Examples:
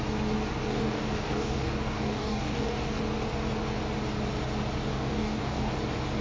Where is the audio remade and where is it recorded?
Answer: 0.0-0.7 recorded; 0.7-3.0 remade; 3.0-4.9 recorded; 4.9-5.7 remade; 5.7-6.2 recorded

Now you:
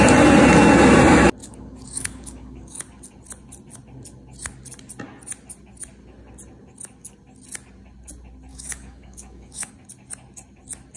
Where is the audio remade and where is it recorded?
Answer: 0.0-1.4 recorded; 1.4-2.8 remade; 2.8-8.5 recorded; 8.5-9.7 remade; 9.7-11.0 recorded

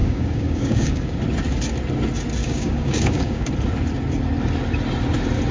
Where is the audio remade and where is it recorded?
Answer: 0.0-1.2 remade; 1.2-2.4 recorded; 2.4-3.5 remade; 3.5-5.5 recorded

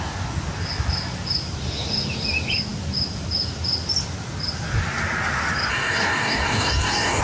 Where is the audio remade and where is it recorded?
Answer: 0.0-5.7 recorded; 5.7-7.2 remade

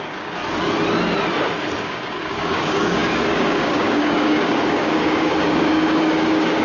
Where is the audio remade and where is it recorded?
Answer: 0.0-0.4 remade; 0.4-1.8 recorded; 1.8-6.6 remade